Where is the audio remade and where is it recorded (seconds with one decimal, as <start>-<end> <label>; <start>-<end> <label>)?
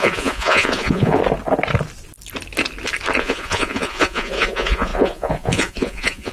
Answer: 0.0-1.2 remade; 1.2-3.2 recorded; 3.2-6.3 remade